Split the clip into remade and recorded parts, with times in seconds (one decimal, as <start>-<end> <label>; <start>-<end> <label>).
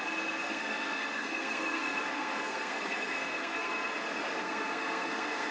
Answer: 0.0-0.4 recorded; 0.4-3.7 remade; 3.7-4.4 recorded; 4.4-5.5 remade